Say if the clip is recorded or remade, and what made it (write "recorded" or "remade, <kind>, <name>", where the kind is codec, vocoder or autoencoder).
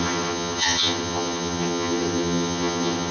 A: remade, vocoder, HiFi-GAN